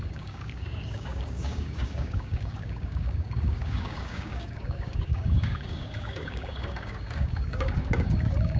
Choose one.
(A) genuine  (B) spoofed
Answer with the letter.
B